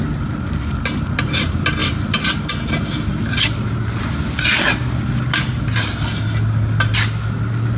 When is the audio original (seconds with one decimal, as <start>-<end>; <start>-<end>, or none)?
0.0-7.8